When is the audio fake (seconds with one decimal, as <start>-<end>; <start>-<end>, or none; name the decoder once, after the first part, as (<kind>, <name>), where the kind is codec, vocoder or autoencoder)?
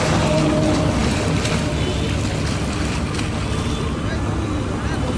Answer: none